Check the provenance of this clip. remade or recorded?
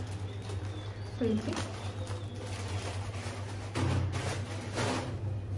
recorded